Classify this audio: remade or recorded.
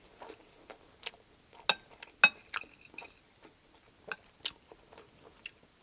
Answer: recorded